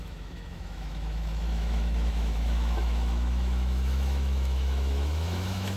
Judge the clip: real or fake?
fake